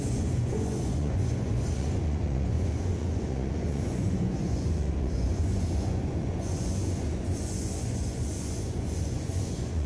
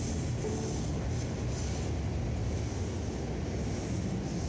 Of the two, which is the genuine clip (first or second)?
second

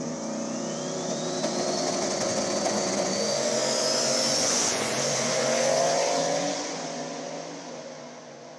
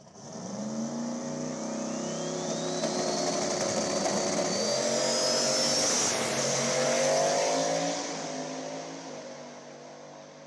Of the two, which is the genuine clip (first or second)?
second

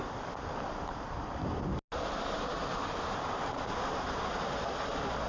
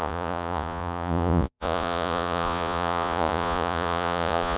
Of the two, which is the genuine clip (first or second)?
first